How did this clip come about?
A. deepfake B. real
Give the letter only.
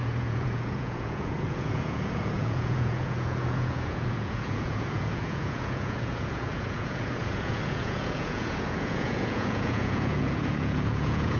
A